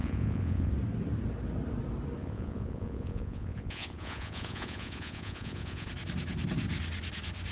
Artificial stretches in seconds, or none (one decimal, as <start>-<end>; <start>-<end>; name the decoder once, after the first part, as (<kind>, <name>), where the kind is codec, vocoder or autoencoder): 0.0-0.7 (vocoder, Vocos); 2.2-5.9